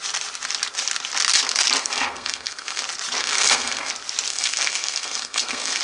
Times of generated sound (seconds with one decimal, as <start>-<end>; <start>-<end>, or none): 1.8-2.8; 3.2-3.9; 4.3-5.8